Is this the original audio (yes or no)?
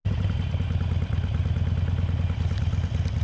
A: yes